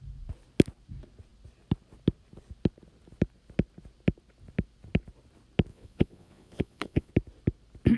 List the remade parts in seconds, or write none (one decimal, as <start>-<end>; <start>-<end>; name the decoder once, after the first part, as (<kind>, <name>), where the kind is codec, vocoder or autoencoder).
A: 5.7-7.1 (vocoder, Vocos)